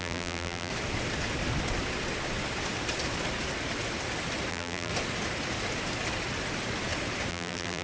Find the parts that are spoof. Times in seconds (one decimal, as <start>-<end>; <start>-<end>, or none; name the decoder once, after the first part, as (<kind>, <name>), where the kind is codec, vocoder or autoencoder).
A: 0.0-0.7 (vocoder, BigVGAN v2); 4.5-4.9; 7.3-7.8